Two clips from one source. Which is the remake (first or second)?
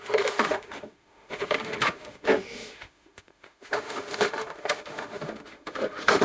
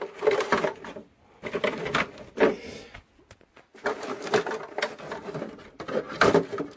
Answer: first